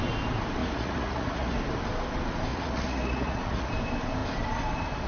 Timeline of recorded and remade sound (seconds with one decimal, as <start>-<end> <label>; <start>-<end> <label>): 0.0-0.6 recorded; 0.6-1.6 remade; 1.6-2.5 recorded; 2.5-3.7 remade; 3.7-5.1 recorded